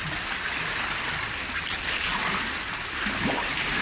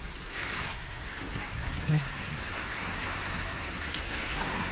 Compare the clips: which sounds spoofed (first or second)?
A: second